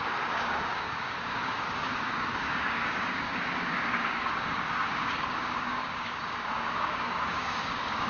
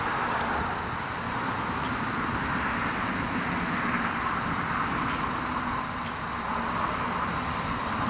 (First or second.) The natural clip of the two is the second